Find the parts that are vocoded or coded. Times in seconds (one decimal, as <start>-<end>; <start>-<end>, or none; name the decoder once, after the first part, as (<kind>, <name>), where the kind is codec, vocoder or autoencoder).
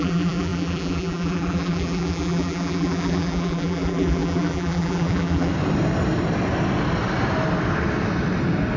0.0-5.5 (vocoder, BigVGAN v2)